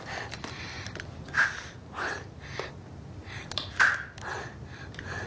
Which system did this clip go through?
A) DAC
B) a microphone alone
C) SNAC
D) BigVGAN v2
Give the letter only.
B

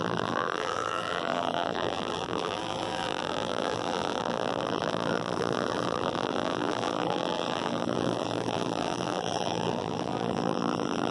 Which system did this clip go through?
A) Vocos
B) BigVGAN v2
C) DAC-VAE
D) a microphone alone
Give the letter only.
B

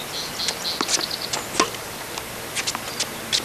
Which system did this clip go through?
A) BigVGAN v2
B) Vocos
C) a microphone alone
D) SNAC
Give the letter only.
C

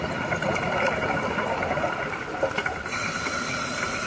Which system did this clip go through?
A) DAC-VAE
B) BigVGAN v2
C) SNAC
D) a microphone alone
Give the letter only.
B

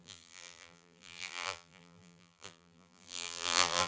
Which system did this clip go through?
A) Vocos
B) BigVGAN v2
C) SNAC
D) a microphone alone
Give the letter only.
B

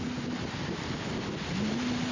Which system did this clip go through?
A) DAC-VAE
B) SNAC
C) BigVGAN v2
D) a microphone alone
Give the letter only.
D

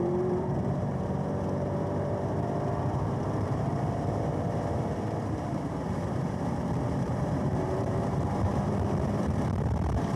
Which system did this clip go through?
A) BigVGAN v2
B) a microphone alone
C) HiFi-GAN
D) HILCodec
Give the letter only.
A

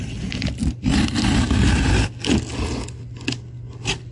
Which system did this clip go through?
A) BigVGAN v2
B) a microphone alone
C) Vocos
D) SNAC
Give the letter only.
B